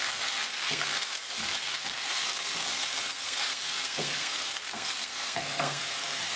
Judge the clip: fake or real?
fake